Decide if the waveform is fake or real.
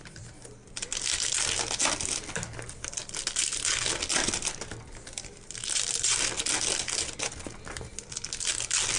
real